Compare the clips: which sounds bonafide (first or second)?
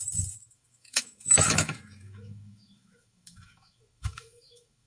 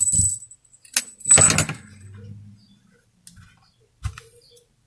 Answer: second